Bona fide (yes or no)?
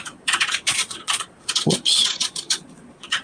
no